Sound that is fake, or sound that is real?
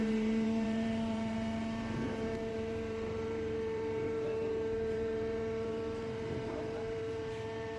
fake